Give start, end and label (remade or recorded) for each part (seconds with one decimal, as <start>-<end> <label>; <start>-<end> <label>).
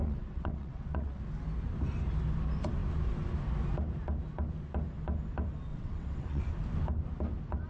0.0-1.2 remade; 1.2-5.7 recorded; 5.7-6.4 remade; 6.4-7.7 recorded